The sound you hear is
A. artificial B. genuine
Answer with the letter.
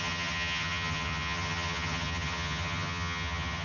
A